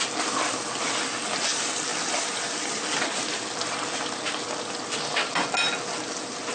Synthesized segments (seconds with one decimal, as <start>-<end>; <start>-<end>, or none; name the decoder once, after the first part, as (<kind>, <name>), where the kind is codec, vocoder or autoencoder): none